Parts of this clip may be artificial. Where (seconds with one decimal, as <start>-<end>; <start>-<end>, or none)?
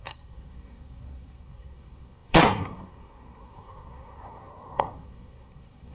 0.0-5.9